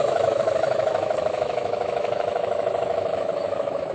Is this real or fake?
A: fake